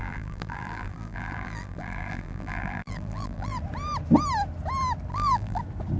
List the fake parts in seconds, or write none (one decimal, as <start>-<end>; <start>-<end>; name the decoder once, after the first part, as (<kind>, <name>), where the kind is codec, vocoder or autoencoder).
0.0-3.6 (vocoder, BigVGAN v2); 5.1-5.6